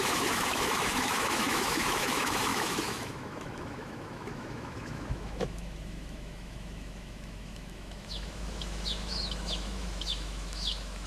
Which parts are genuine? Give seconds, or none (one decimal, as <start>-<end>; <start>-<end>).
none